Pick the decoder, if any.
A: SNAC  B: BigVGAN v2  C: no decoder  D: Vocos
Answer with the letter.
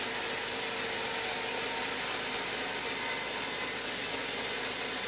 C